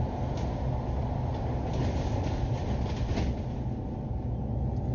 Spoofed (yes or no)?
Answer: no